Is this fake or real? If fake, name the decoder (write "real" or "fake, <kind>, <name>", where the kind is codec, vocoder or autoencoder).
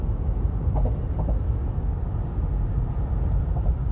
real